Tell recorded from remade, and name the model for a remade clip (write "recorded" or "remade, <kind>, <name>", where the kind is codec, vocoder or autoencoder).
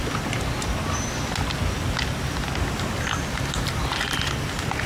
recorded